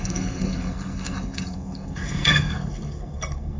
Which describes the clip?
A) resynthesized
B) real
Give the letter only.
A